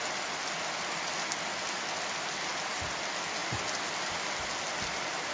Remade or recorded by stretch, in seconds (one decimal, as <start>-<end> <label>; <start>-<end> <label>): 0.0-5.3 recorded